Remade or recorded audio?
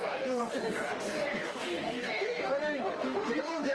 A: remade